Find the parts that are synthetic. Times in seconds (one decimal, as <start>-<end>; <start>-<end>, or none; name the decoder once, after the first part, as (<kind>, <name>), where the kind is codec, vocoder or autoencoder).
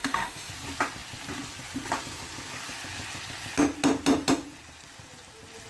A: 0.0-0.5 (autoencoder, DAC-VAE)